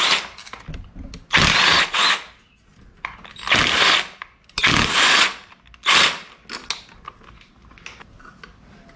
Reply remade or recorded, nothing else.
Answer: recorded